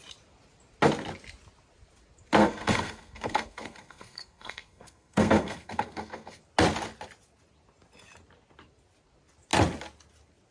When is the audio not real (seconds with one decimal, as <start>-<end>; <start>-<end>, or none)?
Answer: 2.4-6.4